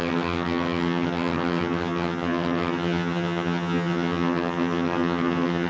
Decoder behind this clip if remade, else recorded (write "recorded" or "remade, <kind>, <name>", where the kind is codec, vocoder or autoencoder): remade, vocoder, HiFi-GAN